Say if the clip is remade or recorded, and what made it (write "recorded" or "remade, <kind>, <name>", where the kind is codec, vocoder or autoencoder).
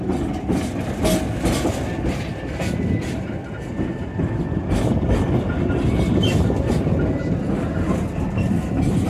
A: recorded